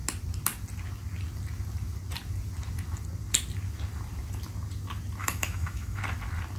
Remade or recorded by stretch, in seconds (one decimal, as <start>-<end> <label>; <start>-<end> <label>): 0.0-5.2 recorded; 5.2-6.0 remade; 6.0-6.6 recorded